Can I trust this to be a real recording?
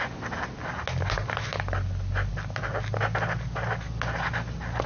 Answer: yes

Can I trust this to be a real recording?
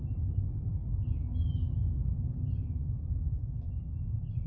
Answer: yes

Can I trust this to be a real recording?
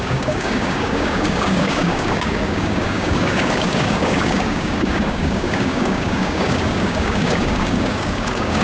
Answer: no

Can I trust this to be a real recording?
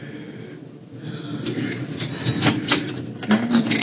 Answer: yes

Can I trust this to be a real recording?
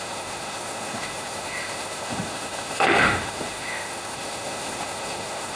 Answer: no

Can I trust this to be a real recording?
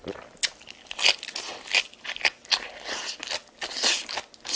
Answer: yes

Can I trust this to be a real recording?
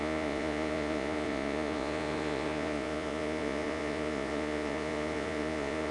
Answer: no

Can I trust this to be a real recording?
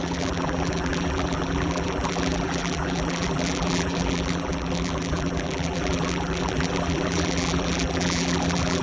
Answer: no